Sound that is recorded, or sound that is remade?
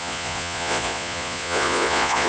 remade